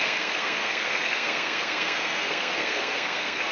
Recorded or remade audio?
remade